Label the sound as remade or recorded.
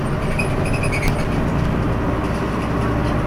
recorded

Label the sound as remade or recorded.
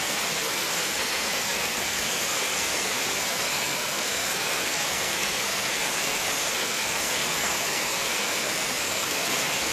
remade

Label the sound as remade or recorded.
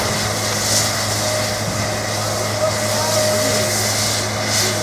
recorded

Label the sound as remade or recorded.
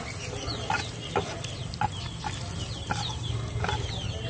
recorded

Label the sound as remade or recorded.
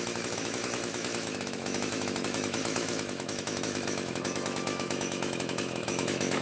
remade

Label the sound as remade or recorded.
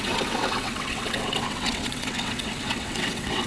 remade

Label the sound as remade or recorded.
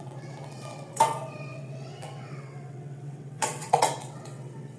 remade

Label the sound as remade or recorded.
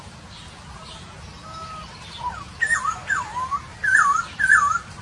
recorded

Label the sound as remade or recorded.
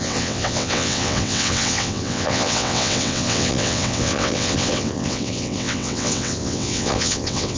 remade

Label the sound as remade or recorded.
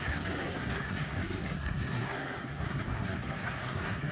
remade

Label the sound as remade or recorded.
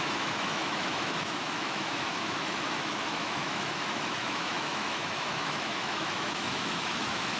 remade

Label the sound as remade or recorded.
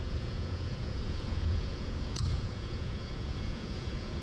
remade